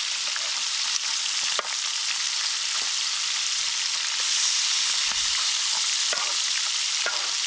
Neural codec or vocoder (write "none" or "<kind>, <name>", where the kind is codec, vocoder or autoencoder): none